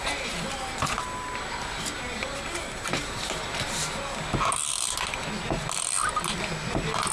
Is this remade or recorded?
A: recorded